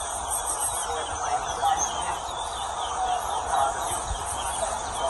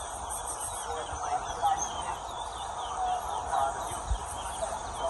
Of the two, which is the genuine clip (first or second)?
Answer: second